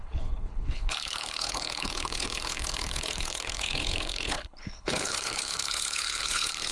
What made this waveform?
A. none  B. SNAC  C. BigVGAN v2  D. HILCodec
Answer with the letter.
D